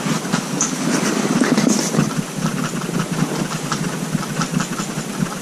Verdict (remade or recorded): recorded